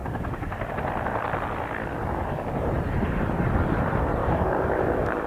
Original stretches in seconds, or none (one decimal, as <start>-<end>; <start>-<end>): 0.7-1.8; 2.5-4.2